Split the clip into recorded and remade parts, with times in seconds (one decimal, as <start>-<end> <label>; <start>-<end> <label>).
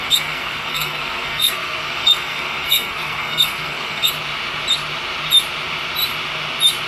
0.0-4.1 remade; 4.1-6.9 recorded